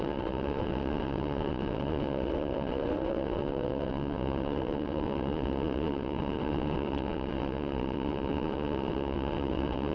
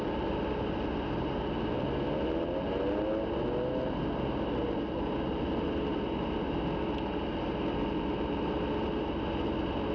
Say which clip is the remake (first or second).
first